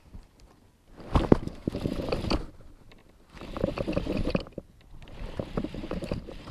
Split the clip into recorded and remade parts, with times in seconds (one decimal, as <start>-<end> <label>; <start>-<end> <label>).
0.0-1.6 recorded; 1.6-2.2 remade; 2.2-6.5 recorded

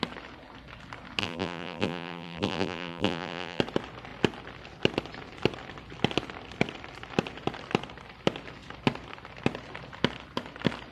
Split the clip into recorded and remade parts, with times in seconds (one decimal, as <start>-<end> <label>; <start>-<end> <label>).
0.0-1.2 recorded; 1.2-3.6 remade; 3.6-10.9 recorded